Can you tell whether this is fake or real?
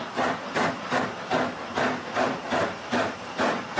real